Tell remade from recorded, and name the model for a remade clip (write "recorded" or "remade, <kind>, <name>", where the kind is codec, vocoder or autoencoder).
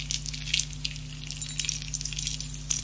recorded